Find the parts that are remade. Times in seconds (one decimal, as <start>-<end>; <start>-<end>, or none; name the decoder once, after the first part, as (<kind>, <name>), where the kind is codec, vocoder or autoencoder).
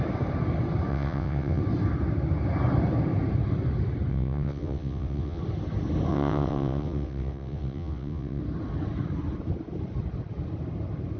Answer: 0.9-1.6 (vocoder, WaveNeXt); 4.1-5.4; 6.1-8.4